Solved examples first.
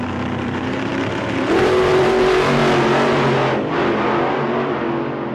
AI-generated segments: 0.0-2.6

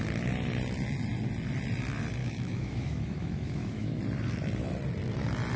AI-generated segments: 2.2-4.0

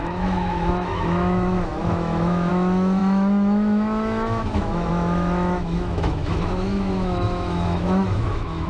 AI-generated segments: 0.0-8.7

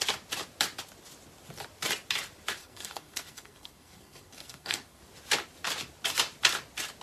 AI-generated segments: 2.6-5.0

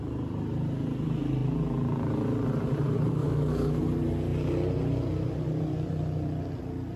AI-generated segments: 3.2-3.8

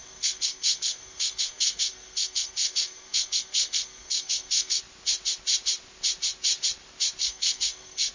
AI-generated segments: 0.0-4.8; 7.2-8.1

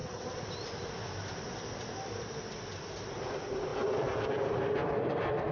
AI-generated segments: 0.0-2.8; 3.7-5.0

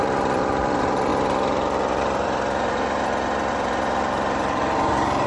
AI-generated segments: 0.0-1.1; 3.5-5.3